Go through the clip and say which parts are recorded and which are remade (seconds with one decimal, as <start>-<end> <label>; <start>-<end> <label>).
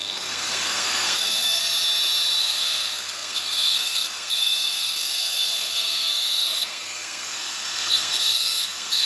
0.0-1.6 remade; 1.6-2.4 recorded; 2.4-9.1 remade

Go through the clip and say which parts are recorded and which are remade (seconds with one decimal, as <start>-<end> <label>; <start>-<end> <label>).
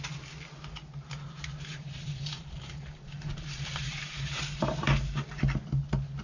0.0-1.7 recorded; 1.7-5.4 remade; 5.4-6.2 recorded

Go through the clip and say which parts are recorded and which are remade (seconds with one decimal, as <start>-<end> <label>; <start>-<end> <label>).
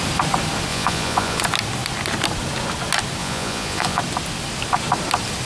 0.0-0.7 recorded; 0.7-1.4 remade; 1.4-3.2 recorded; 3.2-4.0 remade; 4.0-5.5 recorded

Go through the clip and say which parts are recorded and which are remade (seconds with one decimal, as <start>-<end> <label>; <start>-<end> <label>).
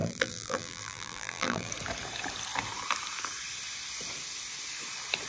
0.0-1.7 remade; 1.7-5.3 recorded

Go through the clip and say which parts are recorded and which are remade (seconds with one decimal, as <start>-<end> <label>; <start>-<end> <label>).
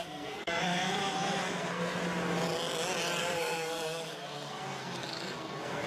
0.0-2.0 remade; 2.0-3.2 recorded; 3.2-5.9 remade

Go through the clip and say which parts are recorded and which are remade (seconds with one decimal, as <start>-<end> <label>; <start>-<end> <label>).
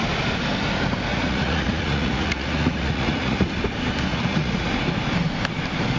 0.0-1.1 recorded; 1.1-3.5 remade; 3.5-4.1 recorded; 4.1-4.7 remade; 4.7-6.0 recorded